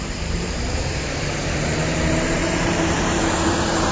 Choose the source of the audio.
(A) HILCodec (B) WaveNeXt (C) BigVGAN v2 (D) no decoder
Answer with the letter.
C